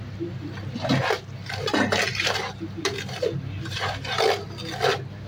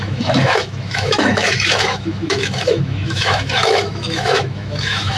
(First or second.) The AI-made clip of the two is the second